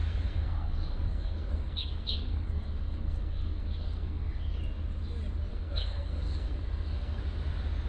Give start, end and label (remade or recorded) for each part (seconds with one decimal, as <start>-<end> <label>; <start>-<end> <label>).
0.0-4.6 remade; 4.6-5.5 recorded; 5.5-7.2 remade; 7.2-7.9 recorded